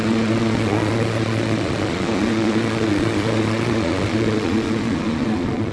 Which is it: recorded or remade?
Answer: remade